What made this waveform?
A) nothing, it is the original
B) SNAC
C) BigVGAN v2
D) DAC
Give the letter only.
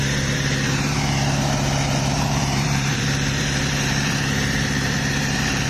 C